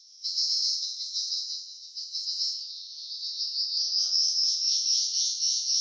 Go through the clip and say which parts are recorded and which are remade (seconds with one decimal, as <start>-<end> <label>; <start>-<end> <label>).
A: 0.0-5.8 remade